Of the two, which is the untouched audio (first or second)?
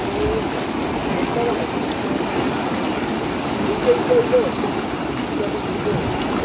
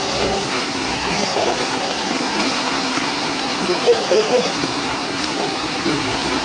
first